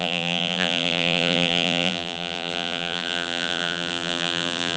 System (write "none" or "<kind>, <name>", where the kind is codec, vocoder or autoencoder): vocoder, BigVGAN v2